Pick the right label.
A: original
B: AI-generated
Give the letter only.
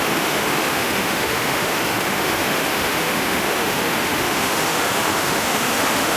B